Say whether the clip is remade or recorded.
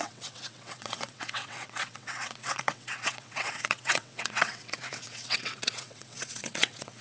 remade